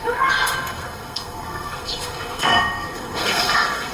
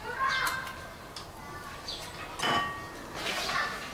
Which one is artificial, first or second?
first